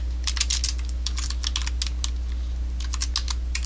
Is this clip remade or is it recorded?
recorded